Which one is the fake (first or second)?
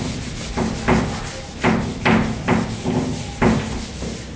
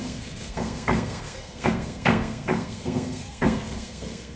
second